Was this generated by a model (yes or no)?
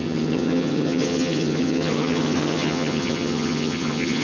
yes